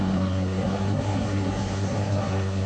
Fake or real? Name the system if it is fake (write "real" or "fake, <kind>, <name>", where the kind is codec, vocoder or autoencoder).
fake, codec, SNAC